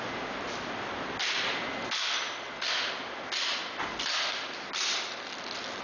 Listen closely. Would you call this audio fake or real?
real